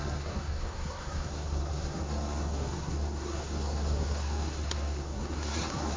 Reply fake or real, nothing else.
fake